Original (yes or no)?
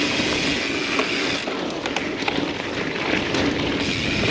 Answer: yes